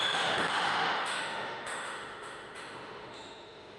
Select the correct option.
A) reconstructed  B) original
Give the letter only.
A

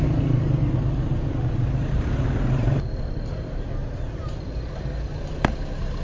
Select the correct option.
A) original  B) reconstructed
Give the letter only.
A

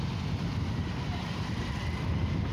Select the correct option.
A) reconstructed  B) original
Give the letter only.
B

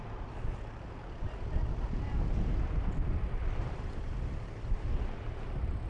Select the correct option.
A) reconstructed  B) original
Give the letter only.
A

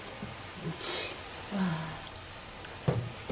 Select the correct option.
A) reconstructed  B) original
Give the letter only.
B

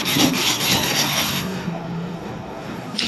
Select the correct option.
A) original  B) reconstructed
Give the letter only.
B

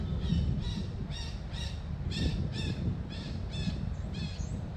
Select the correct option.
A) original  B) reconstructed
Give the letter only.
A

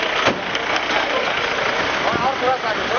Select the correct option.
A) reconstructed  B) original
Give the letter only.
B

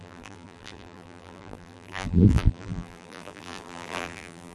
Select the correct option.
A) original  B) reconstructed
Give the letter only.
B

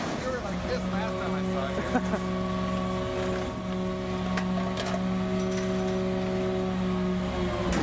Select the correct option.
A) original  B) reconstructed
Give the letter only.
A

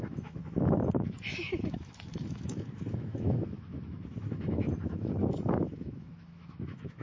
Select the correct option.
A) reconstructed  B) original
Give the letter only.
A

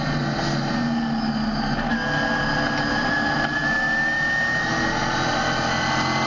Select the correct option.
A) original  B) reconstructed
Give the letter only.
A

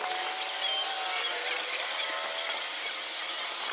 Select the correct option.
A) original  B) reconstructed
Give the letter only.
A